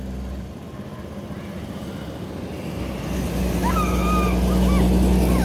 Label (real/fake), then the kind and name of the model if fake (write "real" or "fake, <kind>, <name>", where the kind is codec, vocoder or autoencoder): real